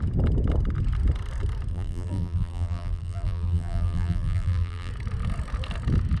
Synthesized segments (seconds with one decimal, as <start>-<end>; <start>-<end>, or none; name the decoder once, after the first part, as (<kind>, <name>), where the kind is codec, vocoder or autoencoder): 1.7-4.9 (vocoder, BigVGAN v2)